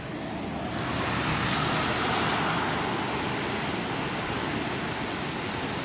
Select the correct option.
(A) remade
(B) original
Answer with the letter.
B